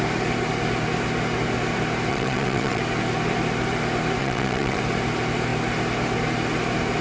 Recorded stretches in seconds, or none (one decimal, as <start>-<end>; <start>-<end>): 0.0-2.1; 2.8-4.2; 4.8-7.0